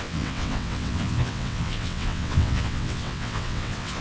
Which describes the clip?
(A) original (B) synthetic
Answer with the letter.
B